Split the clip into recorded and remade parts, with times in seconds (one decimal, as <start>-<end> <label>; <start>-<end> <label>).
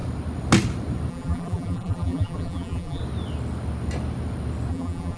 0.0-1.1 recorded; 1.1-3.0 remade; 3.0-4.7 recorded; 4.7-5.2 remade